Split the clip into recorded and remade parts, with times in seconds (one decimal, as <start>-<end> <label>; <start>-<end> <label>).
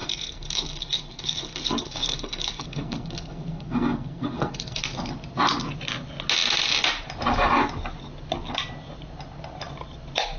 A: 0.0-4.8 remade; 4.8-10.4 recorded